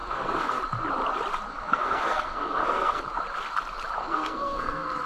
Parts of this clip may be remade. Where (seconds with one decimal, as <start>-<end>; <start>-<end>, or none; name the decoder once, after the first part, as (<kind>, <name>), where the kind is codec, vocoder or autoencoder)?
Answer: 0.0-0.6 (codec, SNAC); 1.5-3.0; 4.0-5.1